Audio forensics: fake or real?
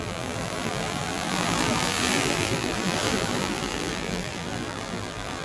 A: fake